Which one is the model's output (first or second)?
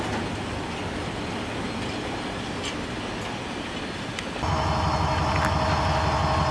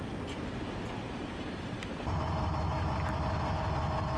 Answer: second